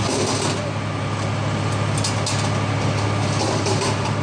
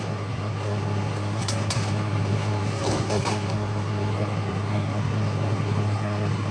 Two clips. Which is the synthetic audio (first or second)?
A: second